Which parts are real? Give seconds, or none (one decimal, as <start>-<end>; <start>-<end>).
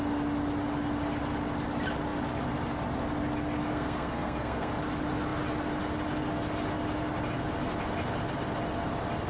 0.0-3.7; 4.7-9.3